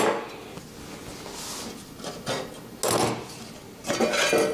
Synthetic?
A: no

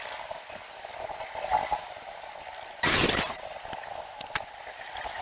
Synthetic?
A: yes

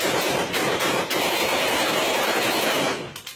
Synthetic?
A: no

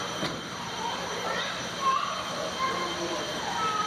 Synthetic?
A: yes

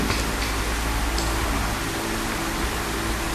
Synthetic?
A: no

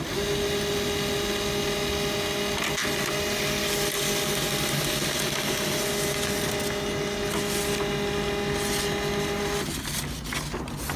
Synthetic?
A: no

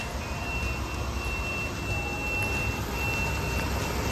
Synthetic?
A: no